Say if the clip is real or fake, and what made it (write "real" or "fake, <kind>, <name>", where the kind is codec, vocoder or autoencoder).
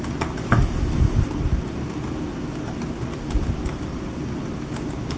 real